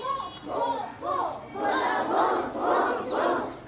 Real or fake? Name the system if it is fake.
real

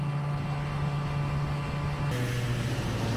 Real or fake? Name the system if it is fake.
real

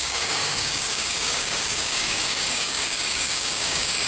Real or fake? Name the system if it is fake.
fake, codec, DAC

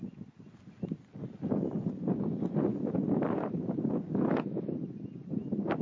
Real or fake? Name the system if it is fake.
real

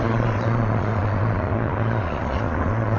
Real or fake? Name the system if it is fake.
fake, vocoder, Vocos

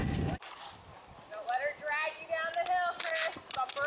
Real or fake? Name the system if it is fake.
real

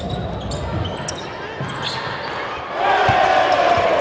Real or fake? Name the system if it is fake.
real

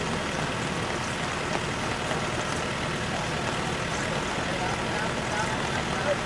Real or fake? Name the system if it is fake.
real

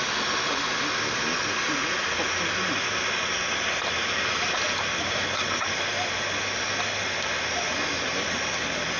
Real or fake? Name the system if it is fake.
real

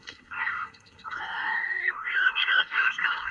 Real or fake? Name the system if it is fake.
fake, codec, SNAC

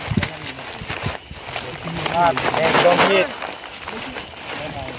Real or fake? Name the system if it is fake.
real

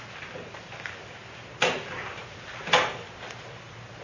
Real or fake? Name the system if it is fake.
real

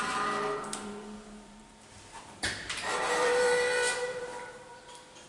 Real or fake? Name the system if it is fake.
fake, vocoder, BigVGAN v2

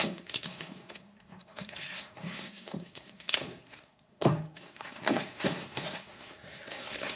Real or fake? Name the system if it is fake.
fake, codec, SNAC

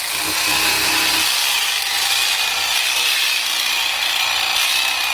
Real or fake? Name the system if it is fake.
fake, vocoder, BigVGAN v2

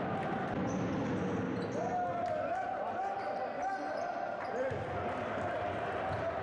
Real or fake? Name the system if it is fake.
real